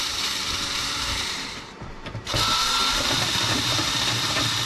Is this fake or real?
fake